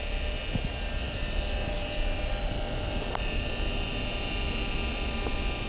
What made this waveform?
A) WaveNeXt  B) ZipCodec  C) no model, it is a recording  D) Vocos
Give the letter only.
C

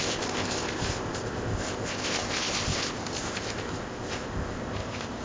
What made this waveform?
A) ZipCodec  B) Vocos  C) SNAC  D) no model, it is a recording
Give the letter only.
A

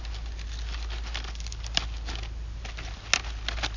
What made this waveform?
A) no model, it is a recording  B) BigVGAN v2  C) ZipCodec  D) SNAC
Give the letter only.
A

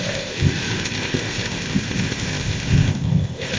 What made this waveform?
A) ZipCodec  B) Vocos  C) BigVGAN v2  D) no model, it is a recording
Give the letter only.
A